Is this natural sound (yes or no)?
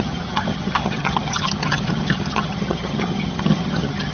no